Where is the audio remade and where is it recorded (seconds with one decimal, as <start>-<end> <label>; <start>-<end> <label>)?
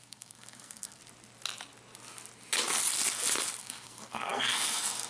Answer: 0.0-1.0 remade; 1.0-3.6 recorded; 3.6-5.1 remade